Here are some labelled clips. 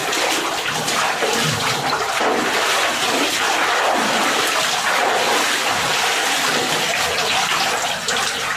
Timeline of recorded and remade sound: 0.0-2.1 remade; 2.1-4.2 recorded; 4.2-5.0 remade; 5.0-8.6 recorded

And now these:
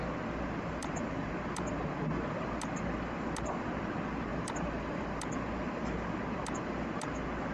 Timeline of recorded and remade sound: 0.0-4.3 recorded; 4.3-5.1 remade; 5.1-7.5 recorded

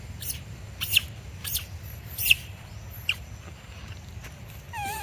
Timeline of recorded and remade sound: 0.0-1.4 recorded; 1.4-2.7 remade; 2.7-5.0 recorded

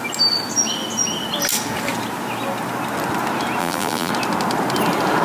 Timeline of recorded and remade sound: 0.0-3.6 recorded; 3.6-4.1 remade; 4.1-5.2 recorded

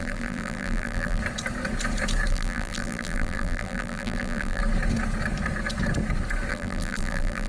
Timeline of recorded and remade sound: 0.0-1.2 remade; 1.2-2.3 recorded; 2.3-4.6 remade; 4.6-6.5 recorded; 6.5-7.5 remade

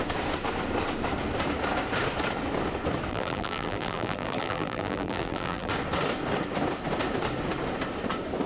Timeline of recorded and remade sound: 0.0-3.1 recorded; 3.1-5.7 remade; 5.7-8.5 recorded

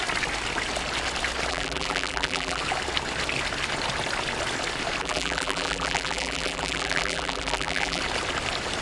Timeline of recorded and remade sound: 0.0-1.5 recorded; 1.5-2.6 remade; 2.6-5.0 recorded; 5.0-8.0 remade; 8.0-8.8 recorded

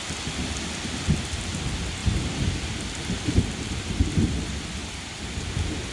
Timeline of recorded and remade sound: 0.0-2.0 recorded; 2.0-3.9 remade; 3.9-4.8 recorded; 4.8-5.5 remade; 5.5-5.9 recorded